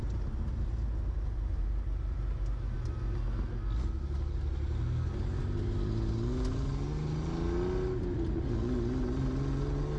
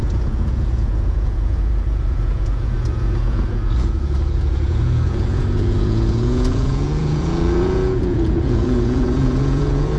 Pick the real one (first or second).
first